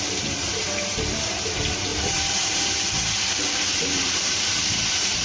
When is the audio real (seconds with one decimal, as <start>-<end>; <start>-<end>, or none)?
0.0-1.9